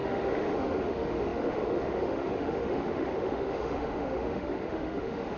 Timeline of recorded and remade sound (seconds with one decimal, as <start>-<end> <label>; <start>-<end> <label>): 0.0-5.4 remade